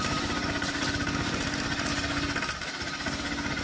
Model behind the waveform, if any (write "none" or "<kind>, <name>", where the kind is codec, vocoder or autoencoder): none